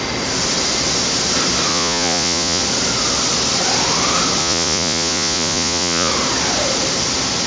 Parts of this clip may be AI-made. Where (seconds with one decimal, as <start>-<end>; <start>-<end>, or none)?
1.7-2.6; 4.4-6.1